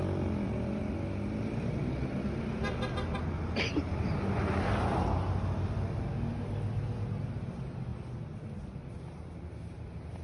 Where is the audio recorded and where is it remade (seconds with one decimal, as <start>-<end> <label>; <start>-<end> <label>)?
0.0-10.2 recorded